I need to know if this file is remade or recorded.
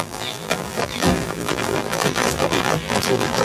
remade